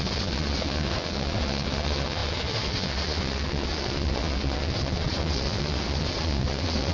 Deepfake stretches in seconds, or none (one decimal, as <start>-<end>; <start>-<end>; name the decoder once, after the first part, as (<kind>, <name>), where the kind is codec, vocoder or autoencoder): 0.0-6.9 (vocoder, WaveNeXt)